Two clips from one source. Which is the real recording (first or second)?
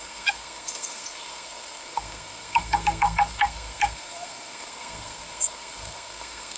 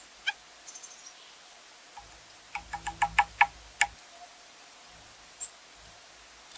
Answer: second